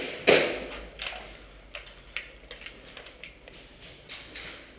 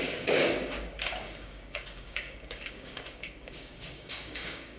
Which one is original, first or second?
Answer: first